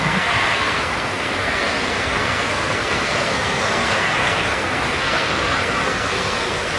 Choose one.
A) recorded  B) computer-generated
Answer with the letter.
B